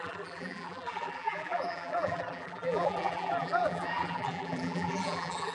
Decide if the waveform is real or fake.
fake